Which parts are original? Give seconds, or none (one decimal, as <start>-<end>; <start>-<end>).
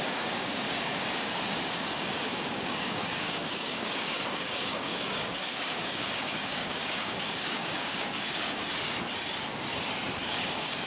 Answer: 8.6-10.3